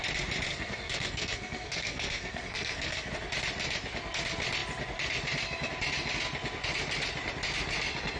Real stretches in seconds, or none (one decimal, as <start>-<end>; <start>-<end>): 0.0-0.5; 3.1-8.2